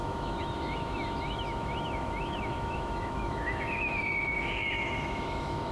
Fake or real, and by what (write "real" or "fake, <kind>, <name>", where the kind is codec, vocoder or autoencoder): fake, autoencoder, DAC-VAE